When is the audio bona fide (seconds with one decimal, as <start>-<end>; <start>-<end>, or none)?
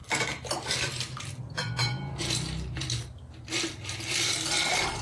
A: 0.0-5.0